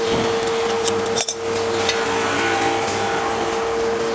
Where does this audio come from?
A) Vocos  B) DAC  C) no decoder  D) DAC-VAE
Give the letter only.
C